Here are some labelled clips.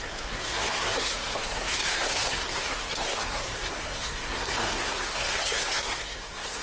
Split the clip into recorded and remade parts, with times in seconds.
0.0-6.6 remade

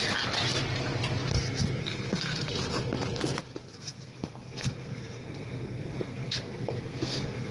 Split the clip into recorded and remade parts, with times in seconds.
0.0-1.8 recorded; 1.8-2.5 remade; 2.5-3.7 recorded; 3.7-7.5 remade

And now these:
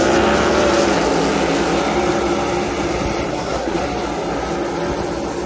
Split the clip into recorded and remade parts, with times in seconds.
0.0-3.3 recorded; 3.3-3.8 remade; 3.8-5.5 recorded